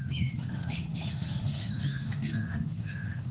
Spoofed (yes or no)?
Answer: yes